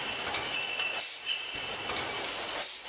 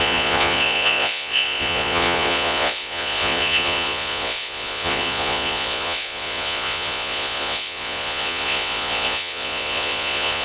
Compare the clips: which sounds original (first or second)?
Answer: first